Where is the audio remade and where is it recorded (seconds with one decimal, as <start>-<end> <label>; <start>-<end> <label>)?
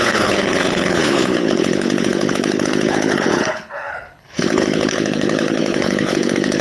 0.0-6.6 remade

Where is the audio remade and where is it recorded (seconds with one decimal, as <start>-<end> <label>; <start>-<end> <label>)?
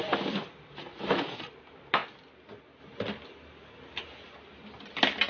0.0-5.3 recorded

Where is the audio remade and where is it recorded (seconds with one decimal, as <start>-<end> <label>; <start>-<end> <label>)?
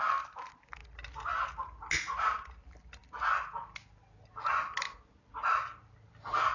0.0-6.5 recorded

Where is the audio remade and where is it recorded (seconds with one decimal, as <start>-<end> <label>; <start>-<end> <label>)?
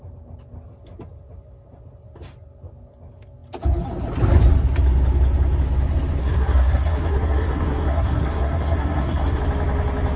0.0-6.2 recorded; 6.2-9.4 remade; 9.4-10.2 recorded